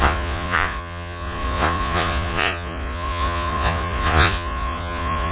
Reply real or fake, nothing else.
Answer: fake